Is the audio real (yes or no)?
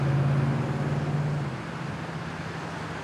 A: yes